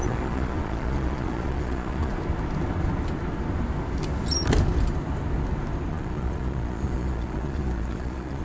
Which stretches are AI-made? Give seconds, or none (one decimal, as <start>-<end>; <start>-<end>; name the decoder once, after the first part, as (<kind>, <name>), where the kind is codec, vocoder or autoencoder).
0.0-2.1 (vocoder, Vocos); 5.9-8.4